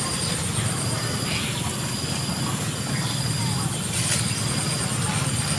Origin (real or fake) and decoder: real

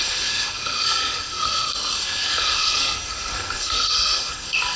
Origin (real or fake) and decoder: fake, codec, SNAC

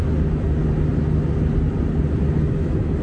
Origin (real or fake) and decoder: real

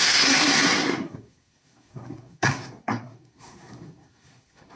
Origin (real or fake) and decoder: fake, codec, SNAC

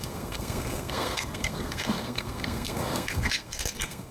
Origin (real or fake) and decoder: fake, codec, SNAC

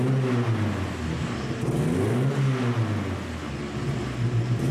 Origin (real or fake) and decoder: real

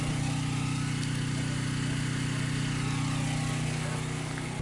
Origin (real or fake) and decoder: real